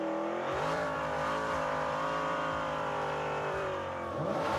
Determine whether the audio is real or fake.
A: fake